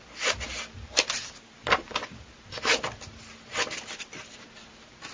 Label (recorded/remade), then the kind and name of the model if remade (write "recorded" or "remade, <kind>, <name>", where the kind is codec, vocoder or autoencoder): recorded